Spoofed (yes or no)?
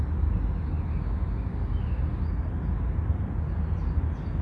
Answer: no